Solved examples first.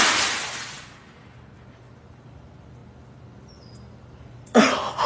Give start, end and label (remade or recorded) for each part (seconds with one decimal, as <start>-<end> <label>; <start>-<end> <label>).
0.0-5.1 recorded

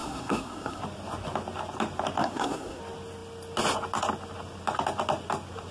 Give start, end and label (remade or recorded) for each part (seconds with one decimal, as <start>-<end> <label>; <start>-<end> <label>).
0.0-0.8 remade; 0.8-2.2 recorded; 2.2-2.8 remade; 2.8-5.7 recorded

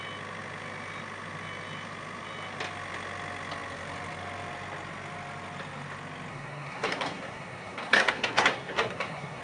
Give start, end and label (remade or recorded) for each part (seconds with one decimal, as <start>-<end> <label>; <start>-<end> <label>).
0.0-6.3 recorded; 6.3-9.4 remade

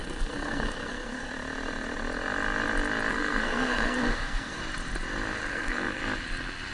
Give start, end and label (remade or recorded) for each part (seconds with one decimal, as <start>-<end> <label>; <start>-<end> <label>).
0.0-1.3 remade; 1.3-3.1 recorded; 3.1-4.6 remade; 4.6-5.5 recorded; 5.5-6.0 remade; 6.0-6.7 recorded

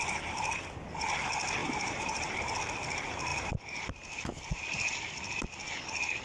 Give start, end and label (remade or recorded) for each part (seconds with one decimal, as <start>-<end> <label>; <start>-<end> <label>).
0.0-1.6 recorded; 1.6-2.4 remade; 2.4-3.3 recorded; 3.3-3.9 remade; 3.9-6.2 recorded

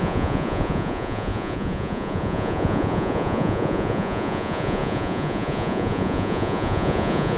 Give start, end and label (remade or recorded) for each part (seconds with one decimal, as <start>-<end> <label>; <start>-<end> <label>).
0.0-7.4 remade

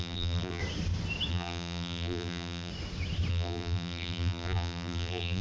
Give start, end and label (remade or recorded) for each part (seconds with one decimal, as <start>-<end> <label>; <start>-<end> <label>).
0.0-0.6 remade; 0.6-1.3 recorded; 1.3-2.7 remade; 2.7-3.3 recorded; 3.3-5.4 remade

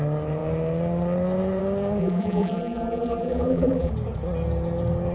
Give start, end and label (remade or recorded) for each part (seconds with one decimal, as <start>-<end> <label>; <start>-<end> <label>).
0.0-2.0 recorded; 2.0-3.9 remade; 3.9-5.1 recorded